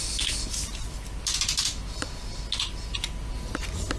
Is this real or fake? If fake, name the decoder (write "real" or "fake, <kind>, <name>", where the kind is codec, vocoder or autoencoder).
real